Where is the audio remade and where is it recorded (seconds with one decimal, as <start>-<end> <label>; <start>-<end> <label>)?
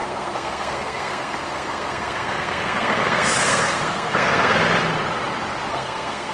0.0-4.6 remade; 4.6-5.7 recorded; 5.7-6.3 remade